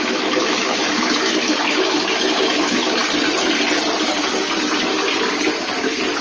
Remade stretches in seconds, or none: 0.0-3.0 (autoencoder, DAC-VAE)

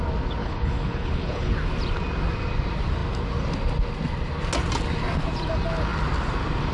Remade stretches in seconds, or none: 0.4-1.5 (codec, HILCodec)

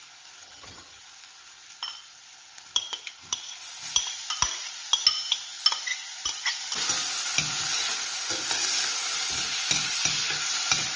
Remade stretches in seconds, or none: 0.4-1.0 (vocoder, HiFi-GAN)

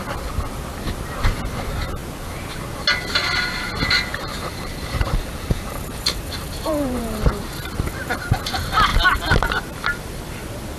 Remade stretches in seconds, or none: 4.1-7.2 (vocoder, BigVGAN v2)

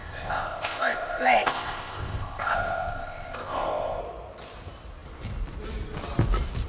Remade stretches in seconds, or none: 0.0-4.0 (codec, ZipCodec)

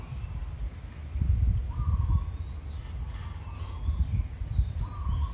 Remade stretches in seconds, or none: none